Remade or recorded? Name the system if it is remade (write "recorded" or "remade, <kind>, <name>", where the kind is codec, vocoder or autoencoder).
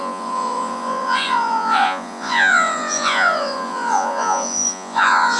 remade, vocoder, Vocos